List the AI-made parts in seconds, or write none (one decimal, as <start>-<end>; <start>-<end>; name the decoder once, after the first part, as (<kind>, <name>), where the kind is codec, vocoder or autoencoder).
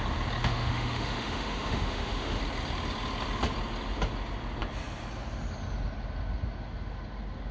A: 0.4-2.4 (autoencoder, DAC-VAE)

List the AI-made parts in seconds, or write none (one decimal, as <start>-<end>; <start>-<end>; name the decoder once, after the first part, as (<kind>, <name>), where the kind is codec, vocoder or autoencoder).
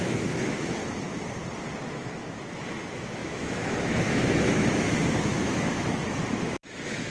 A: 0.0-0.8 (autoencoder, DAC-VAE); 1.9-7.1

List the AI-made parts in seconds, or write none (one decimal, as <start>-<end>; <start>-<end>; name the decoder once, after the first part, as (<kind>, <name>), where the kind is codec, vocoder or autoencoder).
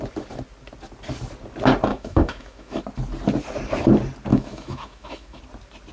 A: 1.9-2.8 (autoencoder, DAC-VAE); 4.3-5.4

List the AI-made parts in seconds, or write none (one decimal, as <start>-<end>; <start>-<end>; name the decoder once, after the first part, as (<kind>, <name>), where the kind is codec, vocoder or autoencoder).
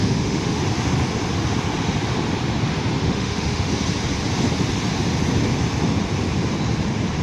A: 0.0-0.6 (autoencoder, DAC-VAE); 3.0-3.7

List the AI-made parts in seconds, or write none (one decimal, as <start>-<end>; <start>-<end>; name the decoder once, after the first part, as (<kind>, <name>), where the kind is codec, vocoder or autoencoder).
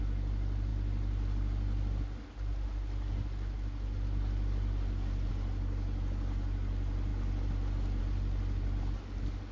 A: none